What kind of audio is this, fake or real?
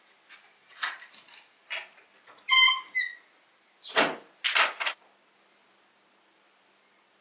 real